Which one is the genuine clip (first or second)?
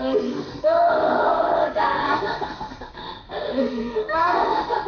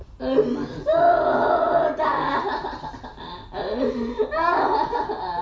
second